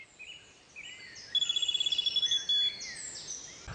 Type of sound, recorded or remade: recorded